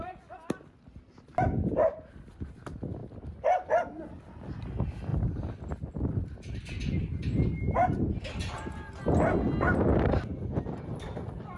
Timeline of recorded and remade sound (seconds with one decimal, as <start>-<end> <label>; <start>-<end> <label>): 0.0-11.6 recorded